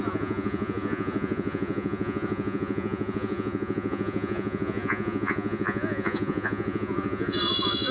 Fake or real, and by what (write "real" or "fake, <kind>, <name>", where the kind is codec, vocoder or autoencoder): fake, vocoder, Vocos